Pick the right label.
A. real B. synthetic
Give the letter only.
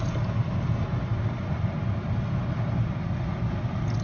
A